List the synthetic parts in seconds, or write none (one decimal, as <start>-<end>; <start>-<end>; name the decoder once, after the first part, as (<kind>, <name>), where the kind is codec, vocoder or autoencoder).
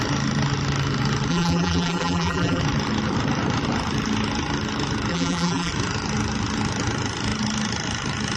1.3-2.6 (vocoder, BigVGAN v2); 5.1-5.7